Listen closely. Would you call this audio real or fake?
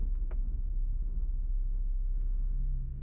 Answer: fake